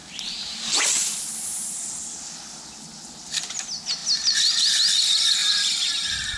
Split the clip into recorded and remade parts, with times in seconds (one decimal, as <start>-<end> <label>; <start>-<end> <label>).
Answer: 0.0-5.4 recorded; 5.4-6.4 remade